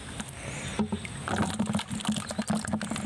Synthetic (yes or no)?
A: no